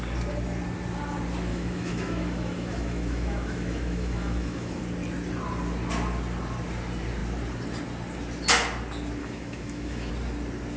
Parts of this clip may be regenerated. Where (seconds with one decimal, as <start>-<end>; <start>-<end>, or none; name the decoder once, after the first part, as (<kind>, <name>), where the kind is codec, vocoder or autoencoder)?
1.5-4.8 (autoencoder, DAC-VAE); 9.2-10.1